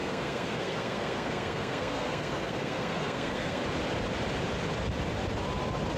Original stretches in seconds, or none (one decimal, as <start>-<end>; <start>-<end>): 3.6-6.0